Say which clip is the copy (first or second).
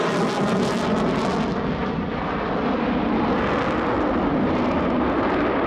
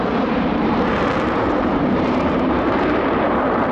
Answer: second